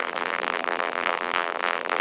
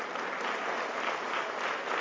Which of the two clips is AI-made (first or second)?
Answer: first